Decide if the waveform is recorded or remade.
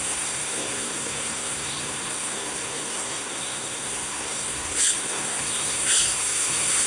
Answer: remade